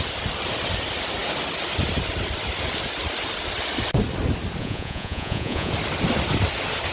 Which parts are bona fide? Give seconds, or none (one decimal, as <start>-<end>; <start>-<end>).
0.0-4.6; 5.7-6.9

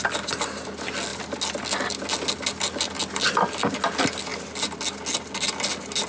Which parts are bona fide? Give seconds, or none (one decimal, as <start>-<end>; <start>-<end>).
0.0-6.1

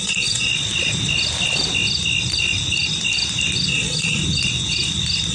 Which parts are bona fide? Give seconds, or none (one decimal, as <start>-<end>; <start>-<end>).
0.5-3.7; 4.2-5.3

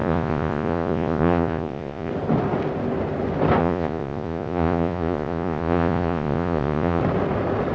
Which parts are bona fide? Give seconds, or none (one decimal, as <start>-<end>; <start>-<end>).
2.1-3.6; 7.0-7.7

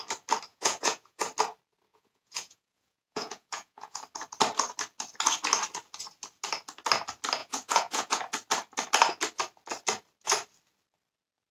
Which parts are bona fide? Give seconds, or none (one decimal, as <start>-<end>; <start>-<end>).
0.0-0.5; 1.2-1.9; 4.0-7.4; 8.2-11.5

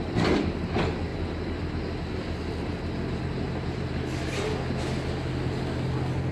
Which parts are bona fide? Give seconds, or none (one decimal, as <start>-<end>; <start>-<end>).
0.0-6.3

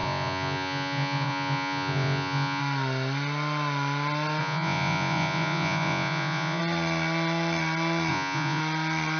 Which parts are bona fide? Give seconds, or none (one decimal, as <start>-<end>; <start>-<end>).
2.6-4.4; 6.6-8.1; 8.6-9.2

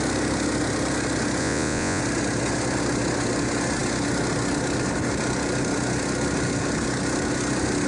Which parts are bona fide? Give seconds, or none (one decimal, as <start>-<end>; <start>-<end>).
0.0-1.4; 2.0-7.9